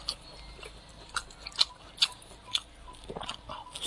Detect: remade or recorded recorded